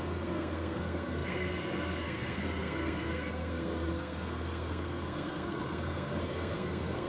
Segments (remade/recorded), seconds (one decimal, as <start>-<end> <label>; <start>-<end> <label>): 0.0-7.1 remade